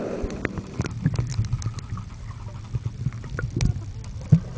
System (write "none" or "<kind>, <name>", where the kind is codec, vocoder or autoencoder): none